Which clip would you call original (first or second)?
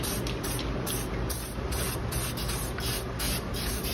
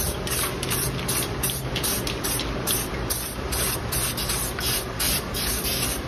first